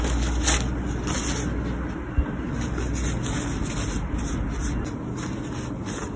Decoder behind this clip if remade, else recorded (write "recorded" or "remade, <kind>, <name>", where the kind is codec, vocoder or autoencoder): recorded